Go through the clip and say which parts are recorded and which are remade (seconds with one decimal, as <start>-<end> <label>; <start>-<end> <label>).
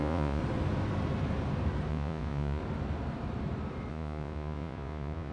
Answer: 0.0-0.4 remade; 0.4-1.9 recorded; 1.9-2.6 remade; 2.6-3.9 recorded; 3.9-5.3 remade